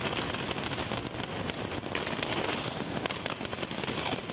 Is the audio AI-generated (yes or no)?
no